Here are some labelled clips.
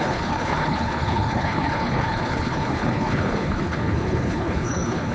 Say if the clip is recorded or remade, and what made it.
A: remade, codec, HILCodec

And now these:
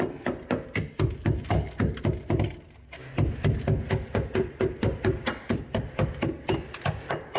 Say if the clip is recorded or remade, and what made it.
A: recorded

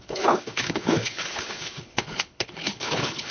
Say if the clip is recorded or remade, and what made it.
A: remade, codec, HILCodec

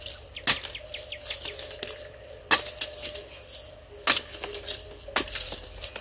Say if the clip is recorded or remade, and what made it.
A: recorded